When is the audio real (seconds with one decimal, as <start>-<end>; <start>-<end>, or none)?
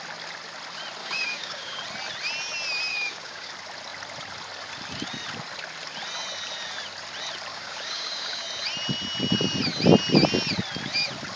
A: 0.0-1.0; 1.8-2.9; 3.5-7.5; 8.4-11.4